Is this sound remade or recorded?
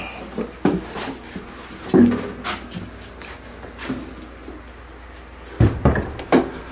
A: recorded